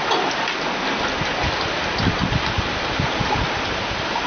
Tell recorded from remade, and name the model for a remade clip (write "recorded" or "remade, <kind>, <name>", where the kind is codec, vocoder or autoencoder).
recorded